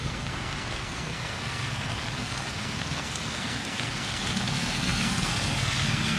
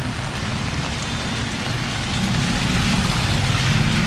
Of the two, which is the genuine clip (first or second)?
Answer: second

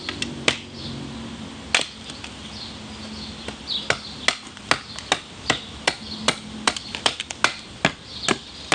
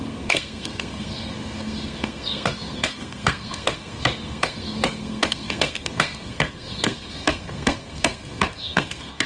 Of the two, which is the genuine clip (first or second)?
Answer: first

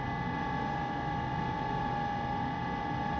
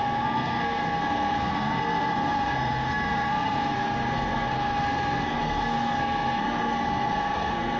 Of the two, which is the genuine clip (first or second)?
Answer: first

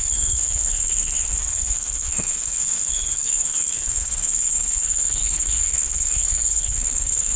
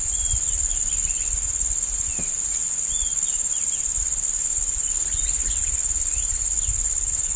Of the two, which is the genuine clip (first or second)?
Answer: second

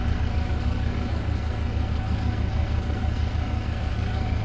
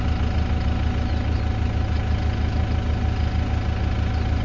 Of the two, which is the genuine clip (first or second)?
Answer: second